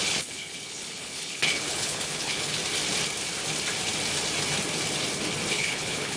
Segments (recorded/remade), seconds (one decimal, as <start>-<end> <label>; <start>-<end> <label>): 0.0-2.6 remade; 2.6-5.5 recorded; 5.5-6.2 remade